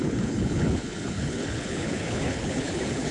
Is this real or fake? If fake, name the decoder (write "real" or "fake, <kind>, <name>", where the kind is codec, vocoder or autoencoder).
fake, codec, HILCodec